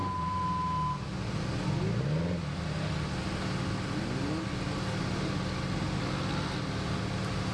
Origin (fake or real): real